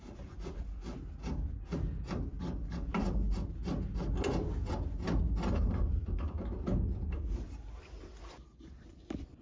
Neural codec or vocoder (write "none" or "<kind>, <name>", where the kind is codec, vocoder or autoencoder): none